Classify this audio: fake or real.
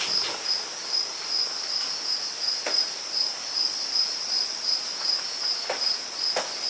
real